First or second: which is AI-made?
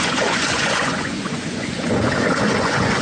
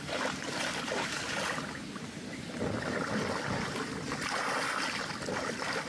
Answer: first